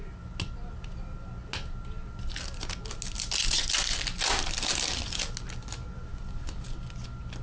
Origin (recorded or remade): recorded